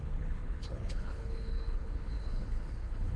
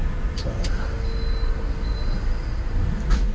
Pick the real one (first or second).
second